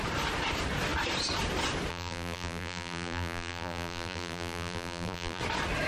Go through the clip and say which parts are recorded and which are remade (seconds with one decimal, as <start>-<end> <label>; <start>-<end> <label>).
0.0-1.9 recorded; 1.9-5.4 remade; 5.4-5.9 recorded